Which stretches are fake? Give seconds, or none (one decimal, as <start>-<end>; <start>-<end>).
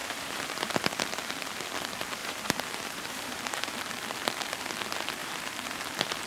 0.0-0.7; 2.2-3.7; 5.2-6.3